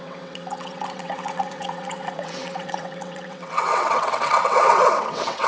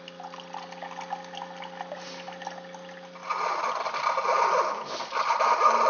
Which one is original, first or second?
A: second